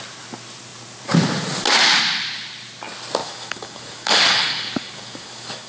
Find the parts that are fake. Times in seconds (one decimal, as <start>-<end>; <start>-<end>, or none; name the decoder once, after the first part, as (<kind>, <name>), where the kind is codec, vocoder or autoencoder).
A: 3.2-5.7 (codec, DAC)